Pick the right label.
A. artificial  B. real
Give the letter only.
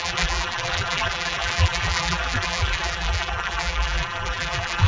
A